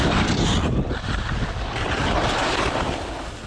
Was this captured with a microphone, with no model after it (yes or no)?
yes